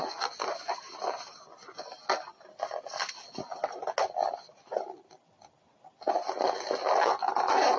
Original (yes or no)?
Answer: yes